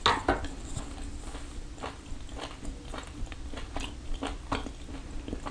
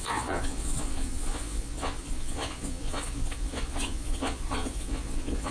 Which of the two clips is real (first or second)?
first